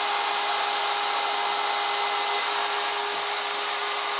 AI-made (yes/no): no